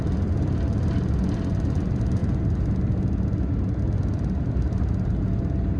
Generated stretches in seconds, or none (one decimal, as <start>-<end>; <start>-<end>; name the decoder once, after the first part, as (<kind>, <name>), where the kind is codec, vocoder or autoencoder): none